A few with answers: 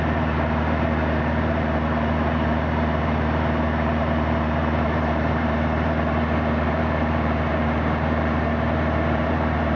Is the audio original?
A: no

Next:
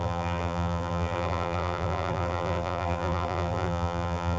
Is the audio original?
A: no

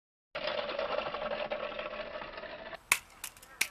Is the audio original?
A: yes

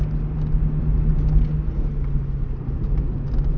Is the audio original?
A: yes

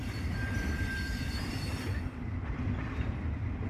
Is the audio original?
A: no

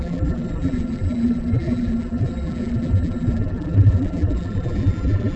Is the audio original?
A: no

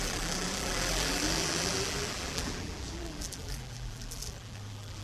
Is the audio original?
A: no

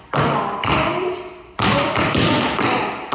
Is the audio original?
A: yes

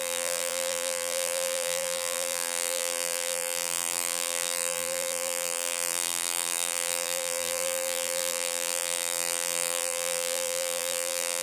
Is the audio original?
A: no